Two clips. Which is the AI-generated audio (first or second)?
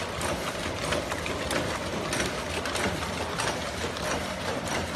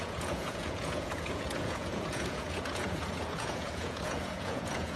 second